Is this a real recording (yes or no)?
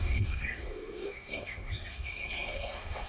no